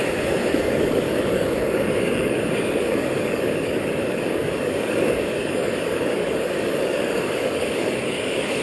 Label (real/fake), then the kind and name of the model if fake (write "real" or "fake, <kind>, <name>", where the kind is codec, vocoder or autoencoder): fake, codec, DAC